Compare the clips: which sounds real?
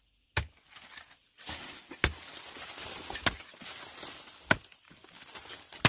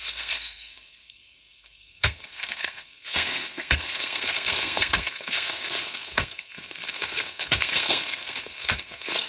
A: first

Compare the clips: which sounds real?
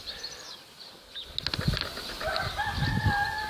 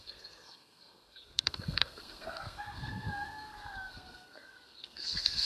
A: first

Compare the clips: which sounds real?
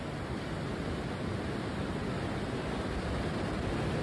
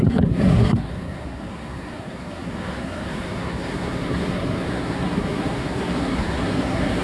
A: first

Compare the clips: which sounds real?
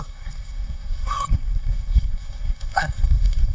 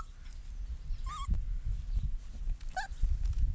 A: second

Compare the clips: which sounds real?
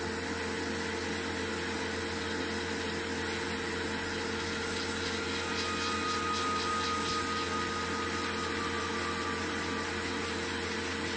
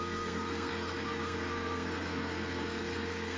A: first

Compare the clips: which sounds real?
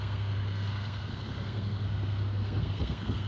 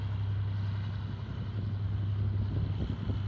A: second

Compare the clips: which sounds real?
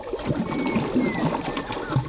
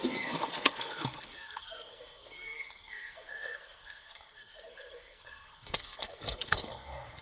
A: first